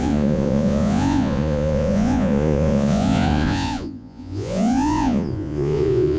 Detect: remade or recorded remade